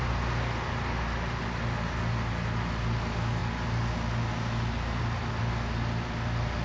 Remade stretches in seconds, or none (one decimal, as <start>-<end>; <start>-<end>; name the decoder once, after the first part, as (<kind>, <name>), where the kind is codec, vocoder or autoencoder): none